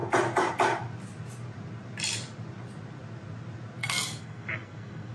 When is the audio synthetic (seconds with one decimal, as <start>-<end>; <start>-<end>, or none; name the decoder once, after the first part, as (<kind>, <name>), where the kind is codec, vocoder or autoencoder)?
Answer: 3.8-5.1 (codec, SNAC)

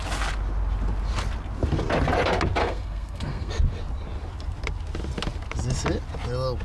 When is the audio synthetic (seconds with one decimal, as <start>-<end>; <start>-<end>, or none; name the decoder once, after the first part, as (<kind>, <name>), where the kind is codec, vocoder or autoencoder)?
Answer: 2.6-3.5 (codec, SNAC)

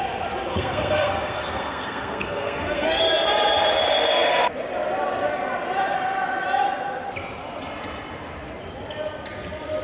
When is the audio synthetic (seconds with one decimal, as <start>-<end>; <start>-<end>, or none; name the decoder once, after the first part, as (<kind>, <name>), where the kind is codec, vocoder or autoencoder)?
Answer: 0.5-3.0 (codec, SNAC)

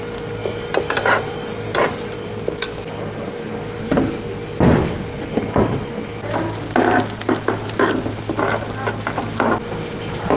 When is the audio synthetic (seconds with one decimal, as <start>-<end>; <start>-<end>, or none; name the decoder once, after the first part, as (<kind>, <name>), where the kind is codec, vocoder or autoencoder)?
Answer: none

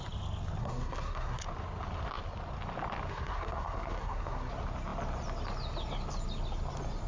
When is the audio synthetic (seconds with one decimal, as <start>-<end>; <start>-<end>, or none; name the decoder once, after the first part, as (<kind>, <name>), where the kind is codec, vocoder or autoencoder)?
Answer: 0.6-1.4 (codec, SNAC); 3.1-4.5